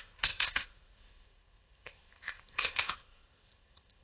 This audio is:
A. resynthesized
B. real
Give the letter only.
A